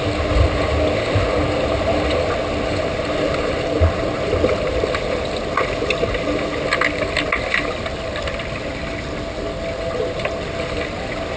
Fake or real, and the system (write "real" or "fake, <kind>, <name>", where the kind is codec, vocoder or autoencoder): real